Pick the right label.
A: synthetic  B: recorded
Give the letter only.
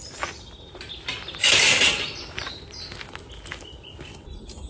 B